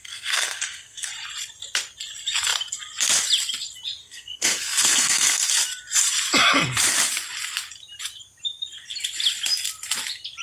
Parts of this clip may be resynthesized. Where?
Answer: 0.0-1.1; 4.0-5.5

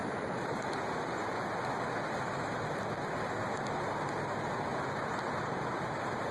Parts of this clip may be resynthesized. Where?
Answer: 0.0-0.9

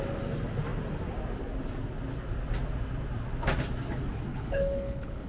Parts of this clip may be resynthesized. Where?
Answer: 4.3-5.3

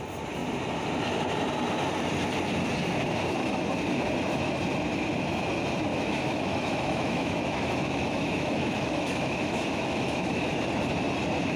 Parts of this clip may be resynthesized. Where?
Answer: 5.9-10.3